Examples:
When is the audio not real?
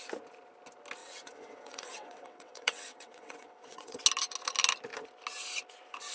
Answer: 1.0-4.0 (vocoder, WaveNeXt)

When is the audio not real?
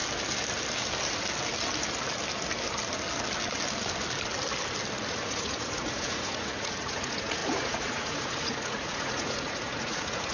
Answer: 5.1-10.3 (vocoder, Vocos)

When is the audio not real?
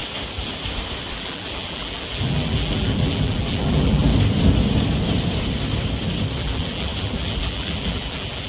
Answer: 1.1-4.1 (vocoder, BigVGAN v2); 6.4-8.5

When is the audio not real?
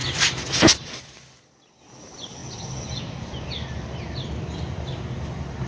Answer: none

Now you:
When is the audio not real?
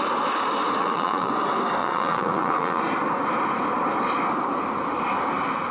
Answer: 0.8-1.3 (vocoder, Vocos); 1.8-2.8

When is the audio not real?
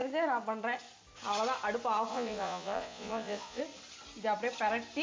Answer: 2.1-3.6 (vocoder, Vocos)